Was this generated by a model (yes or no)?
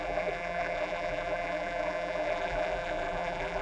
yes